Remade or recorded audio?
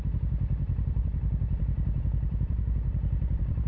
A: remade